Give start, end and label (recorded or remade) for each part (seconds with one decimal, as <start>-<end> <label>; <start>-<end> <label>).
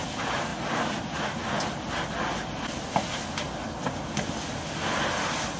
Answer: 0.0-5.6 recorded